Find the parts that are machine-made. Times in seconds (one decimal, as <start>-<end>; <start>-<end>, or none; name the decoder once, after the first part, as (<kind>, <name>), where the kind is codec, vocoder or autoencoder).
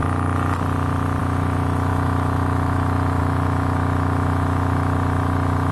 1.2-5.7 (autoencoder, DAC-VAE)